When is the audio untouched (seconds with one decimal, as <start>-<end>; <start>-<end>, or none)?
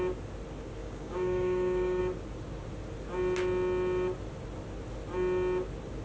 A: 0.0-0.8; 2.0-6.0